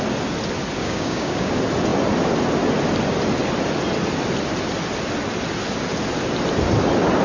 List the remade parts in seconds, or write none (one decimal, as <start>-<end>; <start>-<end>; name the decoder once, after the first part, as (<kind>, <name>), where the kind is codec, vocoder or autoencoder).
0.8-1.5 (codec, DAC)